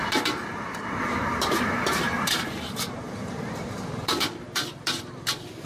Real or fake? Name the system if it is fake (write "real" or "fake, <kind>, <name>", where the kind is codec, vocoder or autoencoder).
fake, vocoder, BigVGAN v2